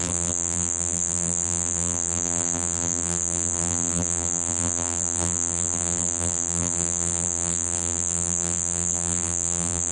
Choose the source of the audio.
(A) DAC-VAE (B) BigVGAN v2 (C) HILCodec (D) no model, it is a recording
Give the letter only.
B